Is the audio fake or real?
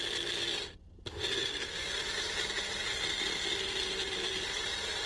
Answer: real